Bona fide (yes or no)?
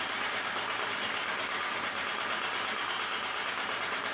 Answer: yes